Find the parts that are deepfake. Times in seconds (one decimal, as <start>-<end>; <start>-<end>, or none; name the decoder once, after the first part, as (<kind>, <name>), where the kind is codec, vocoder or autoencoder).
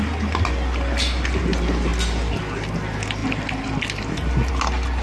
3.2-4.5 (vocoder, BigVGAN v2)